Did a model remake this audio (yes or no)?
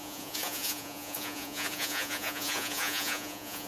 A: yes